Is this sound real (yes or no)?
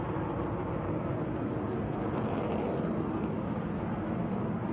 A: yes